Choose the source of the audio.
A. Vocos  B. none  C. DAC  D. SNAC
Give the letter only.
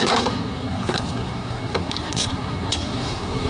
D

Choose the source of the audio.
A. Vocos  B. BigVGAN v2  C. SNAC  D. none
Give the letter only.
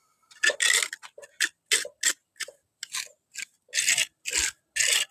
D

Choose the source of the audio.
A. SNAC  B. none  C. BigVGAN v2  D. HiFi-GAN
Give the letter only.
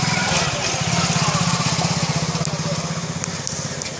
B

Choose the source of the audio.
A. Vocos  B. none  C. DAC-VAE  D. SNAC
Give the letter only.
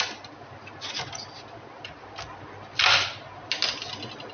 B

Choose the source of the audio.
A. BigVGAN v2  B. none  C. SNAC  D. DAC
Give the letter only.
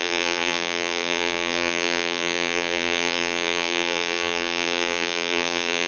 A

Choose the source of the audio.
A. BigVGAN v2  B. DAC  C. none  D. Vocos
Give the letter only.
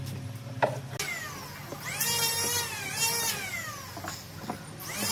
C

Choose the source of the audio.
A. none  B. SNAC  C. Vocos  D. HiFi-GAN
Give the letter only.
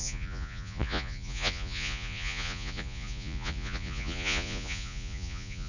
C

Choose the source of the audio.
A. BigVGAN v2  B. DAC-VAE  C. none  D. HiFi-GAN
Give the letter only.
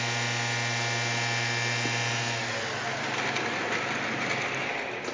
C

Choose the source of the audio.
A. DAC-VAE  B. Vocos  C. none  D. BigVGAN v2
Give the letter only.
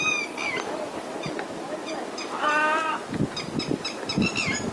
C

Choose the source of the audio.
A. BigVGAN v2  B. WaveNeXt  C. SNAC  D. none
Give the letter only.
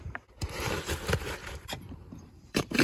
A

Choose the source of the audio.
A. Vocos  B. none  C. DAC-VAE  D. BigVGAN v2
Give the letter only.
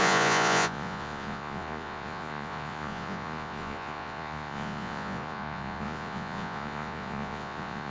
A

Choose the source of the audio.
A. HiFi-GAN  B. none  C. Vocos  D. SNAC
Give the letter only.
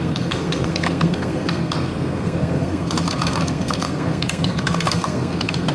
D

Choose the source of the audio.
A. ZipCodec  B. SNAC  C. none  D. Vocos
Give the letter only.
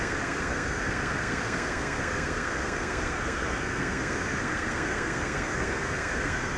B